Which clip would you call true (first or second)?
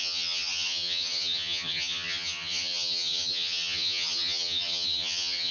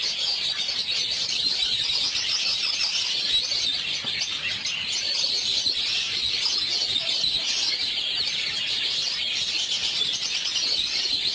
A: second